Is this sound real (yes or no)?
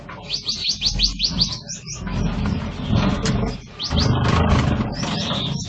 yes